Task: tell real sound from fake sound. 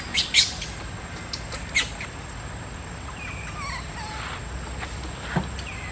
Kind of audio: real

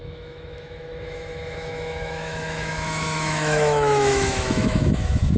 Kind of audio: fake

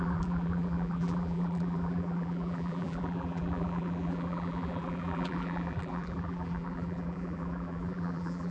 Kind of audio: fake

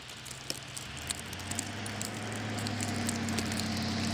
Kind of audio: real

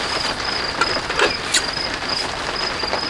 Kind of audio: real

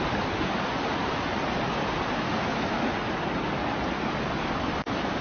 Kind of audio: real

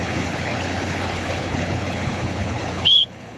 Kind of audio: fake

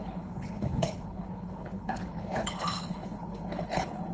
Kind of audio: fake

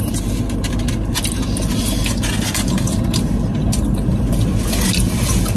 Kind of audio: real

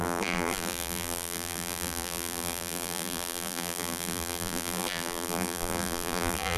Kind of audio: fake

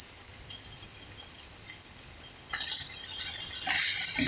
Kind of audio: real